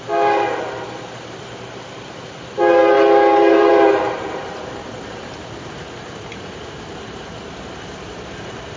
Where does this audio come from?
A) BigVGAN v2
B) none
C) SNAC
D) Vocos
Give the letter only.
A